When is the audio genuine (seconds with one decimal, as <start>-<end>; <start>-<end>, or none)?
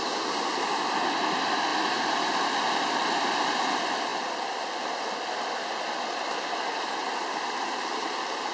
0.0-8.5